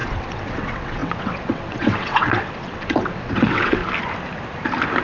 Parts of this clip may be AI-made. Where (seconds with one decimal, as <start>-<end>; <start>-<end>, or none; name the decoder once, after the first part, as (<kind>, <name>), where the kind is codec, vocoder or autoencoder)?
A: 0.0-3.8 (vocoder, WaveNeXt)